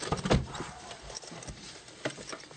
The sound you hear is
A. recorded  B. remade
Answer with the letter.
A